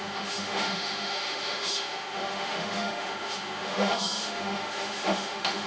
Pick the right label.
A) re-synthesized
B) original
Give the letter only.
A